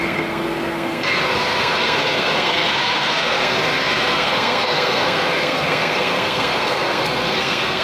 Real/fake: fake